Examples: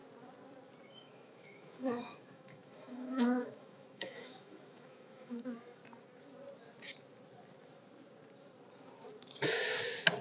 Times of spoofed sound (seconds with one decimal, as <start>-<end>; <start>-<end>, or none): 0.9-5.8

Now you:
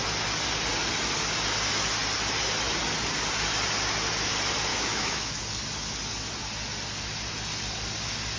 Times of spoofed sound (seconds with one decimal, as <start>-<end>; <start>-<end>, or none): 4.7-5.4

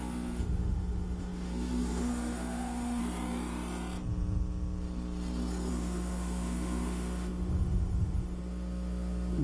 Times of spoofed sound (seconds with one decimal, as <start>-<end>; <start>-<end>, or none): 0.0-3.0; 5.7-9.4